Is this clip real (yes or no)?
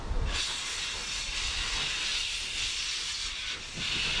yes